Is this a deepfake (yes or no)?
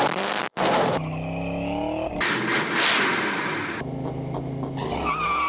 no